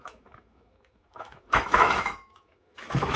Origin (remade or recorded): remade